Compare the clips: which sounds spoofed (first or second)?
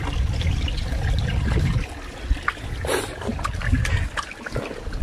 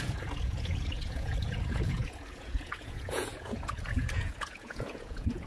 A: second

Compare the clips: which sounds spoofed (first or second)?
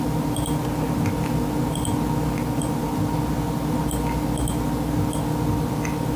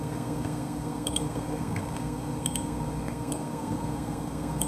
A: second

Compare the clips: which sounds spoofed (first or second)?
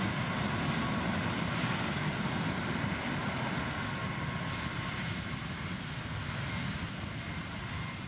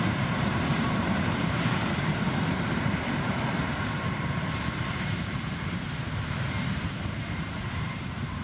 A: second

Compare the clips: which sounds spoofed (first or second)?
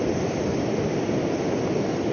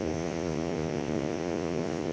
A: second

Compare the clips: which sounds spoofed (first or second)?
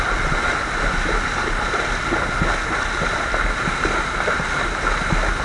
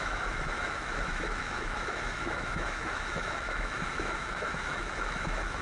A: second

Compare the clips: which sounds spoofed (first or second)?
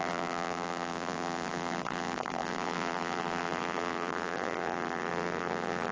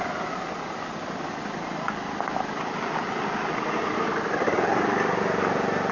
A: first